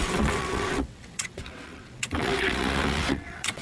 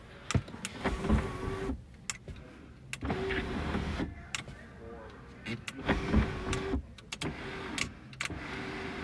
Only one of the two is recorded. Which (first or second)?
second